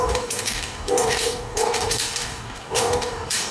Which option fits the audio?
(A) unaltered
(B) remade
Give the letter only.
B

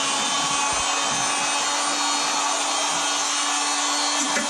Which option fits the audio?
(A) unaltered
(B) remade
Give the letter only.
A